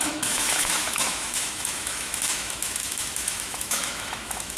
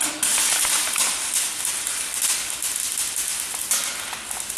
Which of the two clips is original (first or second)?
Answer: second